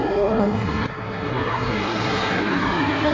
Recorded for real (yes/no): no